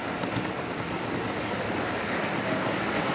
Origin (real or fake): real